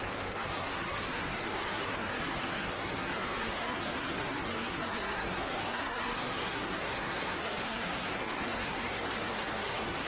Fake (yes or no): yes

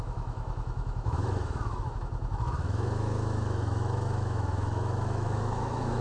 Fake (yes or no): yes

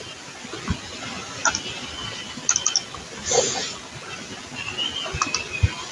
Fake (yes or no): no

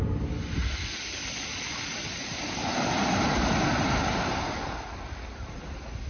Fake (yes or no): no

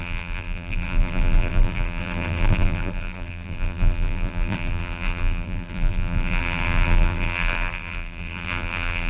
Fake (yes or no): yes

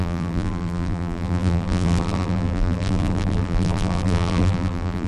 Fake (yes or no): yes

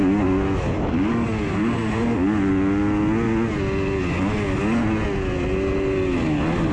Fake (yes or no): no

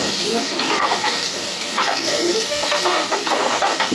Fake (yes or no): yes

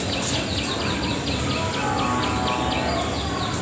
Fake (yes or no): no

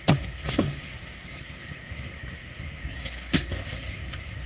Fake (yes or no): yes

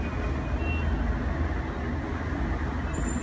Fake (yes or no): no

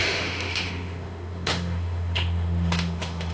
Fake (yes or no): yes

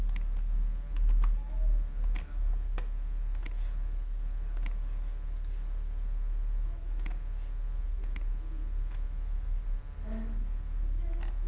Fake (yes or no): no